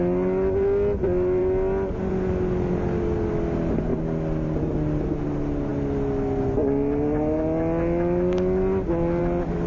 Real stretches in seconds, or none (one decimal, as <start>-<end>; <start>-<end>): 0.0-9.7